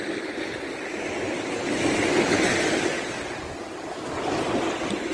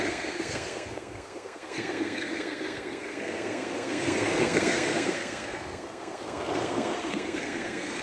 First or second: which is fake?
second